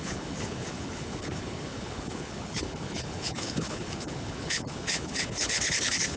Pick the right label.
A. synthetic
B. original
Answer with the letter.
A